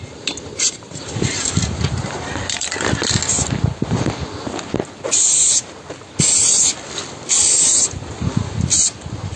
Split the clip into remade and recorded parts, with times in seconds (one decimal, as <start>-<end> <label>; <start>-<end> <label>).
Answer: 0.0-3.2 remade; 3.2-3.8 recorded; 3.8-9.4 remade

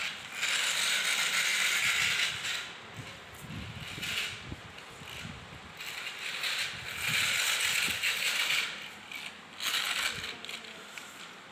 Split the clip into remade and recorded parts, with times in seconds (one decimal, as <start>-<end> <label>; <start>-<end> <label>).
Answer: 0.0-11.5 recorded

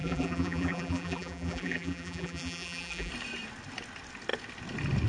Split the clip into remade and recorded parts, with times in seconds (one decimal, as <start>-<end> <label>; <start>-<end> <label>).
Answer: 0.0-3.1 remade; 3.1-5.1 recorded

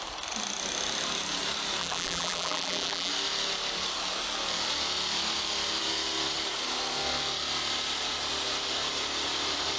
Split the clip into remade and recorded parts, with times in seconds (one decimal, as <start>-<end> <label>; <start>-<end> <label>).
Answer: 0.0-1.8 recorded; 1.8-3.1 remade; 3.1-9.8 recorded

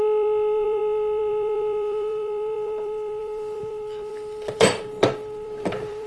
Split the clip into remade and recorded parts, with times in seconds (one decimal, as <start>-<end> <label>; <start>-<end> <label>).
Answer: 0.0-6.1 remade

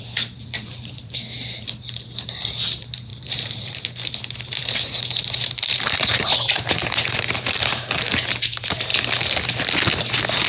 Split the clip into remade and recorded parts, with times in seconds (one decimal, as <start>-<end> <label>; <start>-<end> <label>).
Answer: 0.0-8.9 remade; 8.9-10.5 recorded